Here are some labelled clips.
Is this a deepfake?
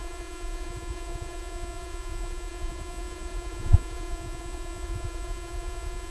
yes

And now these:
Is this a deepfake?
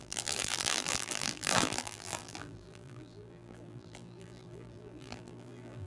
yes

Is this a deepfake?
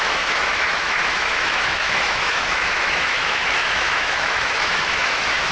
yes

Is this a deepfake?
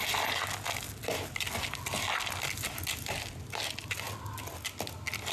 no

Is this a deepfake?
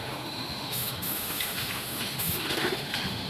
yes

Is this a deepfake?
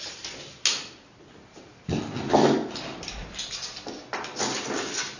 no